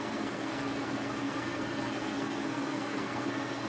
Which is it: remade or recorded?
remade